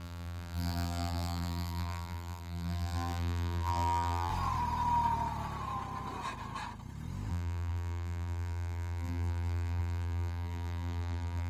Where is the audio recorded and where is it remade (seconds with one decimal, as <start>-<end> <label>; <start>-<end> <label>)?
0.0-4.3 remade; 4.3-7.3 recorded; 7.3-11.5 remade